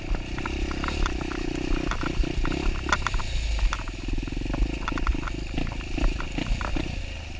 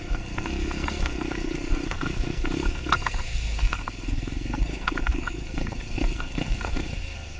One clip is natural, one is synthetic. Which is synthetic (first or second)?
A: second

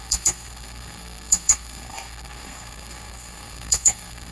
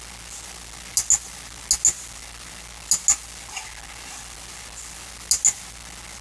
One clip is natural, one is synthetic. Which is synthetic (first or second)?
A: first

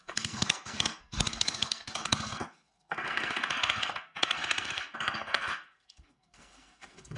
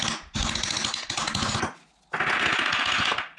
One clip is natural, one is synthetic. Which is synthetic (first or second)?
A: first